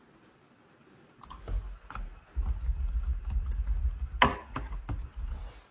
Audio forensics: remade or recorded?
recorded